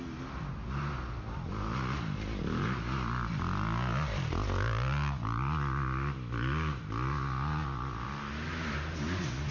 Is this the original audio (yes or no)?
yes